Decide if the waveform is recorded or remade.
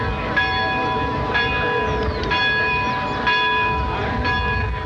recorded